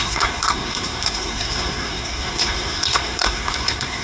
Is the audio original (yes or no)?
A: no